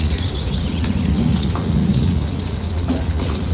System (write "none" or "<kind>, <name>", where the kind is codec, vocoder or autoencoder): vocoder, Vocos